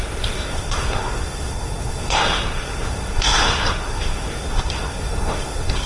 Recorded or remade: remade